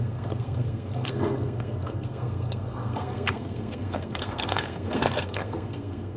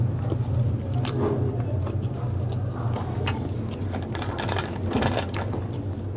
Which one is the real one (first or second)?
second